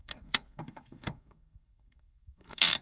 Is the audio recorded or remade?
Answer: remade